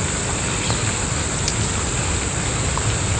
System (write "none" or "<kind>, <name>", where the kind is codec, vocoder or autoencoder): none